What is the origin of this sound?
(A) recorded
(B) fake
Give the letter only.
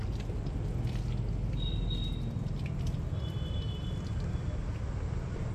A